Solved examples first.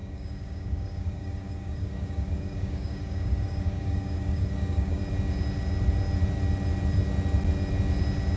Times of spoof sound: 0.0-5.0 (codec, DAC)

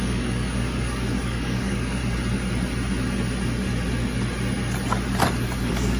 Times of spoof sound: 0.0-2.0 (codec, DAC); 5.6-6.0